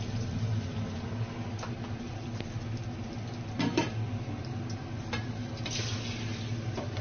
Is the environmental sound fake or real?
real